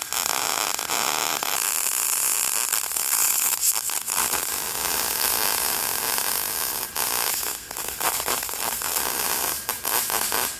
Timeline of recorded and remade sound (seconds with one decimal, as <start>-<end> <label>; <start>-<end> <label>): 0.0-2.7 recorded; 2.7-4.5 remade; 4.5-7.3 recorded; 7.3-9.0 remade; 9.0-10.6 recorded